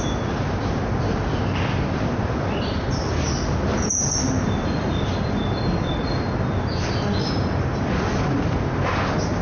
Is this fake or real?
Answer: real